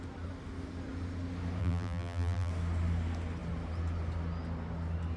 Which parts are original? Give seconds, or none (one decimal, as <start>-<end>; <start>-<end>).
0.0-1.6; 2.5-5.2